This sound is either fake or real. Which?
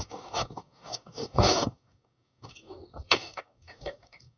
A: fake